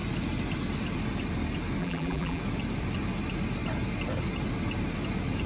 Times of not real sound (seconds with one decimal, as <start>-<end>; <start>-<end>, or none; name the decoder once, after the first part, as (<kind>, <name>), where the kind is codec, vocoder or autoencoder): 1.8-2.4 (vocoder, BigVGAN v2)